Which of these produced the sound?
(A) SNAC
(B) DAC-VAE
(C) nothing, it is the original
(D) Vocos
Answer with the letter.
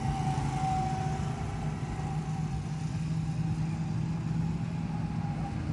C